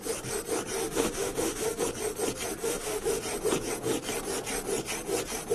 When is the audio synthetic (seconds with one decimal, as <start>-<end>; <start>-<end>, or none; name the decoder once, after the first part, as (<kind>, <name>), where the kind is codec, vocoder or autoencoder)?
0.8-1.8 (autoencoder, DAC-VAE); 2.6-3.2